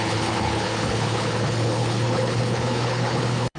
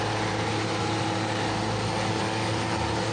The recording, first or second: second